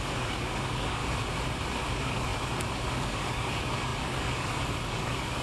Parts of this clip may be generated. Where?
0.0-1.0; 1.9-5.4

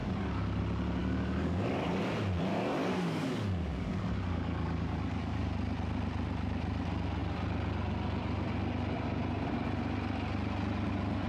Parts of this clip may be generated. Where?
0.0-0.6; 1.0-2.0; 2.5-5.5

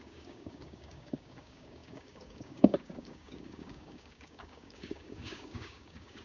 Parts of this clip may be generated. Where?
0.0-6.2

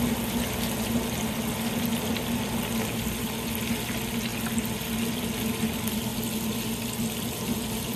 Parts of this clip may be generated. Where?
none

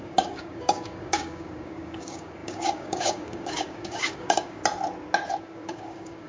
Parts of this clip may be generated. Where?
0.0-4.6; 5.4-6.3

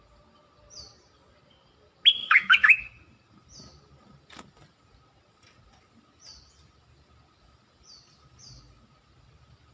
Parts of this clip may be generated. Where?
2.2-2.8